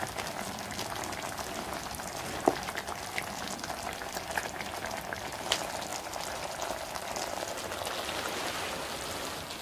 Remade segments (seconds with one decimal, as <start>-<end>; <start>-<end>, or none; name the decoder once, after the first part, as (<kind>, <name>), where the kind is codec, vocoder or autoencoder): none